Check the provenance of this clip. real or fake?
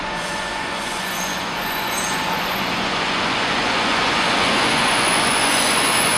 fake